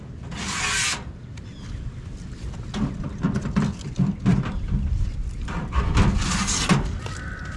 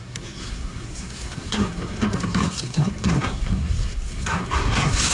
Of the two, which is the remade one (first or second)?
second